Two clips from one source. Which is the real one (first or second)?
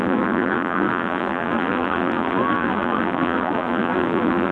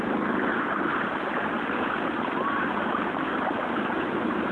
second